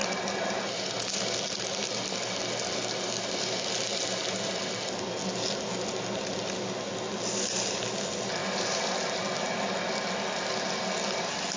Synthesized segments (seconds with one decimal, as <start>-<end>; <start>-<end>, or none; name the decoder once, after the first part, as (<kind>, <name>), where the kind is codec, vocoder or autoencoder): 8.4-9.2 (vocoder, BigVGAN v2)